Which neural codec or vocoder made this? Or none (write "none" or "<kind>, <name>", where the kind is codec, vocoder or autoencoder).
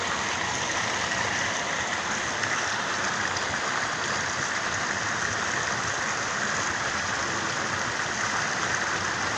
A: none